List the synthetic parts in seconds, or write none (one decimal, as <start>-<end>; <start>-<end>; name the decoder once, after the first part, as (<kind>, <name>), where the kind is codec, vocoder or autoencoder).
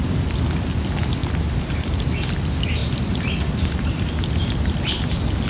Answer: 1.2-2.3 (vocoder, BigVGAN v2); 2.8-4.1